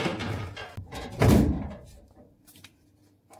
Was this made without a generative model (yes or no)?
yes